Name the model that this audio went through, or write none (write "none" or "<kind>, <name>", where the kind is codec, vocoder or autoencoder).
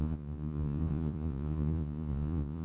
vocoder, Vocos